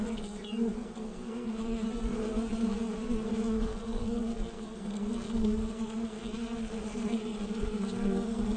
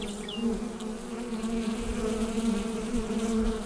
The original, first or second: second